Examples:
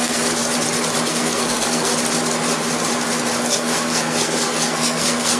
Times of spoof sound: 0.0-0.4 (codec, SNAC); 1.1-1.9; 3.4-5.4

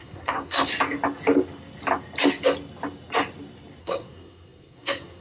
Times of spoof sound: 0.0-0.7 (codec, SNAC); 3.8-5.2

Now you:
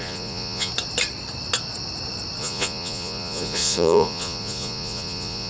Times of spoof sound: 0.0-0.7 (vocoder, Vocos); 2.4-5.5

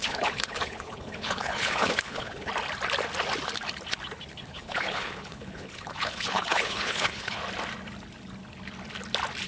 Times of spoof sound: 0.0-2.5 (codec, HILCodec); 4.4-7.4

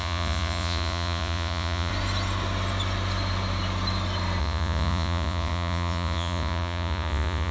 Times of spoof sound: 0.0-1.9 (vocoder, Vocos); 4.4-7.5

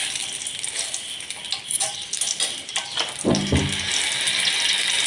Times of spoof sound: none

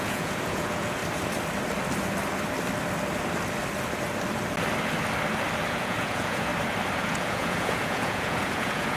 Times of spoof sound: 0.0-1.0 (vocoder, Vocos); 5.7-6.5; 7.0-9.0